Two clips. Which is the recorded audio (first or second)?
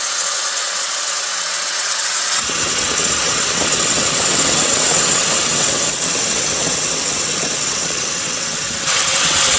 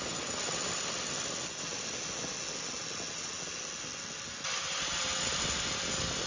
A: second